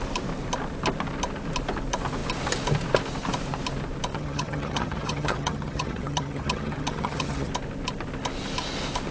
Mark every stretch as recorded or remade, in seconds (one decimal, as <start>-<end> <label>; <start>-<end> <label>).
0.0-4.1 recorded; 4.1-7.5 remade; 7.5-9.1 recorded